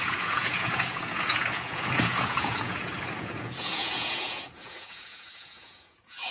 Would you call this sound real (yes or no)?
no